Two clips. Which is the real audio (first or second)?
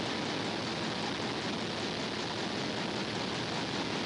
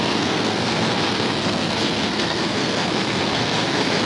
first